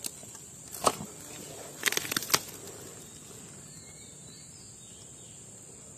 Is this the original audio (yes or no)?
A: yes